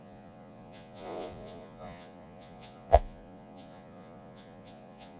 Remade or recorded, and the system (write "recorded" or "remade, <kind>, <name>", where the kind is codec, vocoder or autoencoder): remade, vocoder, Vocos